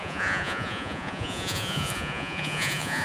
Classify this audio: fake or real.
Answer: fake